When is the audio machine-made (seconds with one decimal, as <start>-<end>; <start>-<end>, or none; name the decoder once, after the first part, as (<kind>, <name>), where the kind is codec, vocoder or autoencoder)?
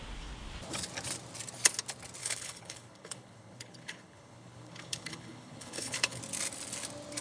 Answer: 2.2-6.2 (codec, HILCodec)